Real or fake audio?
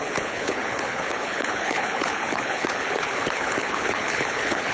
fake